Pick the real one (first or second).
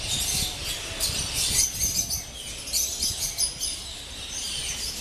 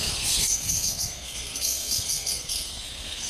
first